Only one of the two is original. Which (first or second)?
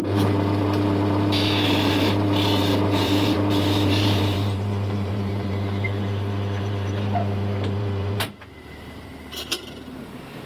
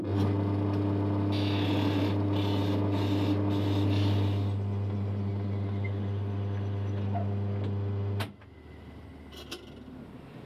second